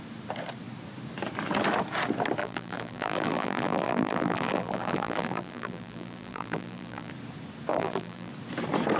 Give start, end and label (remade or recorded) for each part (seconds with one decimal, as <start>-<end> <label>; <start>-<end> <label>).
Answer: 0.0-2.4 recorded; 2.4-7.1 remade; 7.1-7.7 recorded; 7.7-8.3 remade; 8.3-9.0 recorded